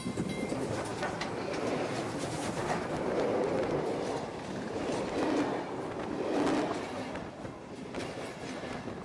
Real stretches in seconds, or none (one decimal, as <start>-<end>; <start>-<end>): 0.5-9.0